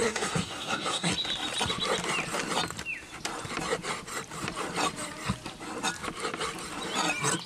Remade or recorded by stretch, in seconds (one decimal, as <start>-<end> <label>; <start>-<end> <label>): 0.0-1.1 remade; 1.1-7.5 recorded

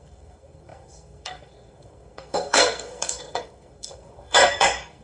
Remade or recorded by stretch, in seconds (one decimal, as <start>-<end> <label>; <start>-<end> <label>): 0.0-5.0 remade